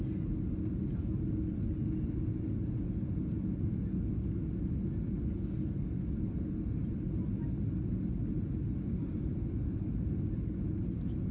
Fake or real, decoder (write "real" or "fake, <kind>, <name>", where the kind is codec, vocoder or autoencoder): real